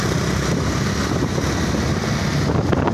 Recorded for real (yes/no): yes